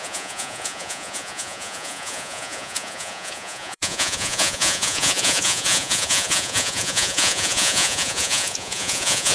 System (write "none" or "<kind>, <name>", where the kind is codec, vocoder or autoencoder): vocoder, Vocos